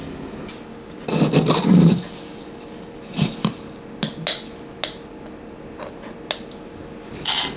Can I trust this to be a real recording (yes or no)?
yes